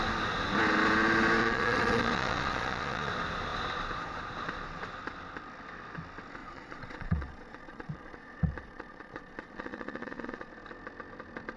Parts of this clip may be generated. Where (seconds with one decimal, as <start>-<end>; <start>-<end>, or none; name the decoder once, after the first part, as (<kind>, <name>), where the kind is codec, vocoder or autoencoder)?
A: 1.4-3.1 (vocoder, Vocos); 6.4-10.5